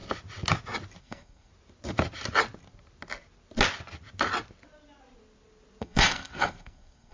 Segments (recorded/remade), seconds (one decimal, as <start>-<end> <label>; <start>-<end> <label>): 0.0-1.0 recorded; 1.0-1.5 remade; 1.5-5.8 recorded; 5.8-7.1 remade